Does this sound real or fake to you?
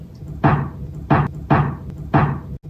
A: real